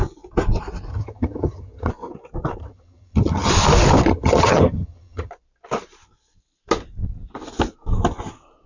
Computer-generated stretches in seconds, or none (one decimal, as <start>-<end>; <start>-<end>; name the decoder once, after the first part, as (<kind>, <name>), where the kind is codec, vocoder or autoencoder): 0.9-1.9 (vocoder, HiFi-GAN); 2.6-3.5; 4.1-5.3

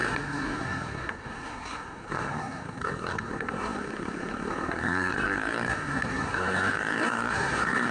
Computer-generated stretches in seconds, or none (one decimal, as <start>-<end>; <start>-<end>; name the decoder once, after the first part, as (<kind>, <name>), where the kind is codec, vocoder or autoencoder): 0.0-7.9 (codec, SNAC)

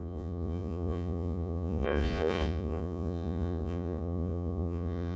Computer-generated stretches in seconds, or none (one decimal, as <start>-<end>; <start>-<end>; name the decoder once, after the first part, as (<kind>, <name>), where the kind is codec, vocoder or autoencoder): 0.0-5.2 (vocoder, Vocos)

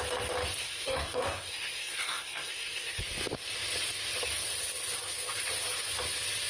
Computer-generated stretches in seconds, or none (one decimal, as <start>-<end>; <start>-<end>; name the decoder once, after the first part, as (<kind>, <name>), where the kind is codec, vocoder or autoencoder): 0.6-3.0 (codec, SNAC)

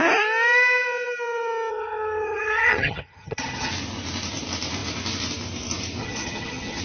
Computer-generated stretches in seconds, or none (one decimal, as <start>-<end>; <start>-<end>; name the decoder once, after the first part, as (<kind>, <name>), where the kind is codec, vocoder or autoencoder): 1.7-3.7 (vocoder, HiFi-GAN); 6.0-6.8

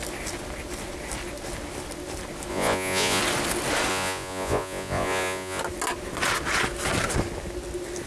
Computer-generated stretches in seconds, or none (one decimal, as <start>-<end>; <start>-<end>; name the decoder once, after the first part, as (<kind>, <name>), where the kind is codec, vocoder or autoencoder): 2.5-3.2 (vocoder, Vocos); 3.9-5.6

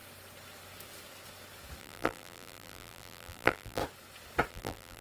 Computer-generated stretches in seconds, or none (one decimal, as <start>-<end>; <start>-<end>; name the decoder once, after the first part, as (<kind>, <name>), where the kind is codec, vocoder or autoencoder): 1.8-3.8 (vocoder, BigVGAN v2); 4.5-5.0